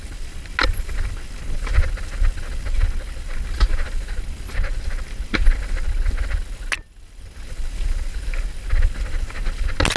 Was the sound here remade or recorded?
recorded